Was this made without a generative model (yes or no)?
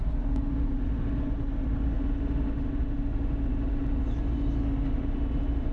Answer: yes